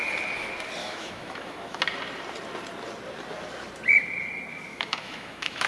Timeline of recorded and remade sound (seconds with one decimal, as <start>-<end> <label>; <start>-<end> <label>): 0.0-0.8 recorded; 0.8-1.8 remade; 1.8-4.7 recorded; 4.7-5.7 remade